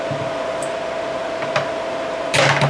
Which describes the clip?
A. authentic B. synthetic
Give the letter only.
A